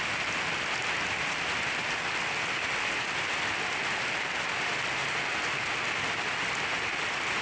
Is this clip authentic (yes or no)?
yes